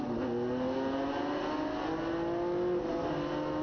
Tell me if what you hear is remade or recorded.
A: recorded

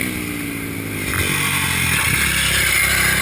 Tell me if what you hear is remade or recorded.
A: recorded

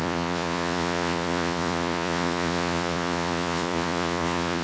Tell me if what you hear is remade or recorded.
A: remade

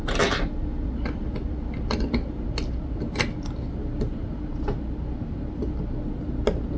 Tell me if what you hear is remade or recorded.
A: recorded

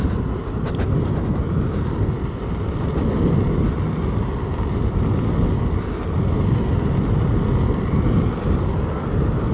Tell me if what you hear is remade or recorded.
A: recorded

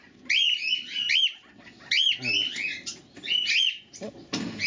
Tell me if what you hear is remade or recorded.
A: recorded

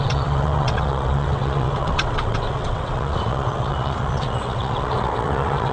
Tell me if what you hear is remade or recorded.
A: remade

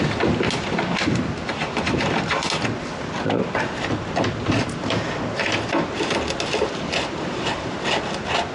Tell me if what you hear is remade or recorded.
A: recorded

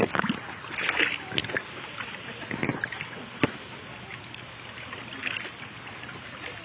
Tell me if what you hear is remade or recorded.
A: recorded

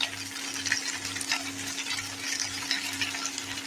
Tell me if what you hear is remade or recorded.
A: recorded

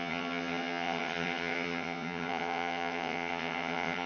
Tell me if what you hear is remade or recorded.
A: remade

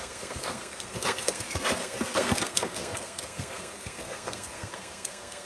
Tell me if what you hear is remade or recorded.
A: remade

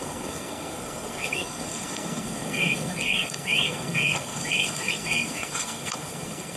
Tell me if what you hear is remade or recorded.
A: remade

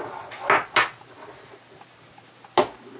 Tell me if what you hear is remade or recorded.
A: recorded